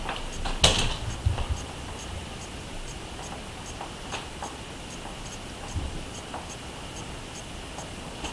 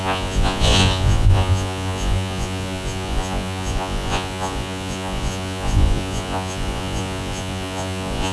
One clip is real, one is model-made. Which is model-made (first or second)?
second